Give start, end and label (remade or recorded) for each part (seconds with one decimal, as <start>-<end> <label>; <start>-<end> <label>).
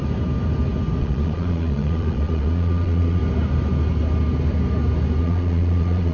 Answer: 0.0-1.0 recorded; 1.0-3.2 remade; 3.2-5.2 recorded; 5.2-6.1 remade